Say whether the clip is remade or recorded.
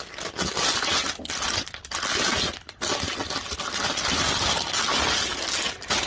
recorded